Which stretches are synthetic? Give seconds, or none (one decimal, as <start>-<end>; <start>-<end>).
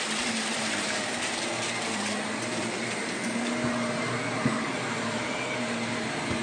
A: 0.0-6.4